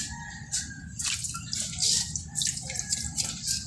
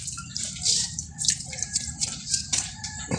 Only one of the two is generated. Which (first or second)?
second